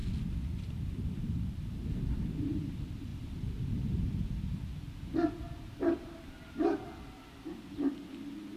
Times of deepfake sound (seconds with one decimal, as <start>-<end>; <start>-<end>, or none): none